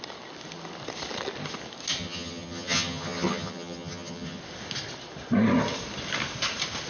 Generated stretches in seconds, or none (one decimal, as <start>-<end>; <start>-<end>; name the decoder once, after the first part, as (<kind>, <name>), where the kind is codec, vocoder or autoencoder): 2.0-4.4 (vocoder, HiFi-GAN)